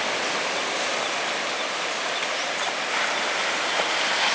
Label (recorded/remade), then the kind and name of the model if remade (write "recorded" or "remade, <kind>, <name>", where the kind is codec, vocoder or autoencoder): recorded